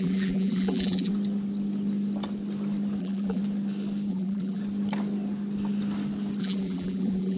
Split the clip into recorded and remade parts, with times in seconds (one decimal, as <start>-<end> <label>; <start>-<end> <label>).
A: 0.0-1.1 remade; 1.1-3.0 recorded; 3.0-3.4 remade; 3.4-4.1 recorded; 4.1-4.6 remade; 4.6-6.4 recorded; 6.4-7.4 remade